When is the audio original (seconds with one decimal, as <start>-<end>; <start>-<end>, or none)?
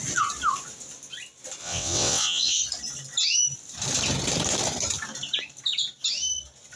0.0-1.6; 2.6-6.8